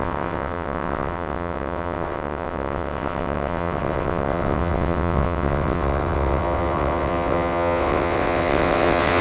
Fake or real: fake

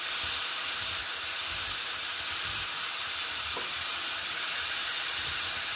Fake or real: real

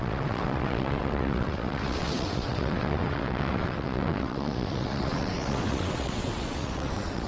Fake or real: fake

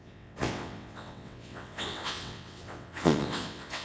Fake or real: fake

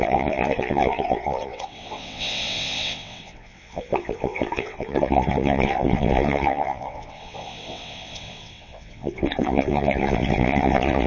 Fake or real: fake